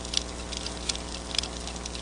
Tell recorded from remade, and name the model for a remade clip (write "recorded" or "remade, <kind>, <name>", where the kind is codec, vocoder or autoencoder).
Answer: recorded